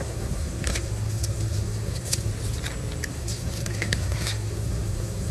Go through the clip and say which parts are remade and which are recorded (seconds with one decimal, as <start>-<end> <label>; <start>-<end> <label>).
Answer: 0.0-2.3 remade; 2.3-3.1 recorded; 3.1-5.3 remade